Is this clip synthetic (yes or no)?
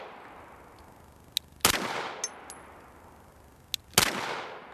no